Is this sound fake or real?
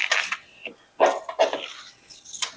real